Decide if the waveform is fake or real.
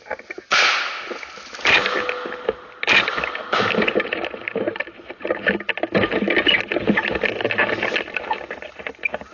real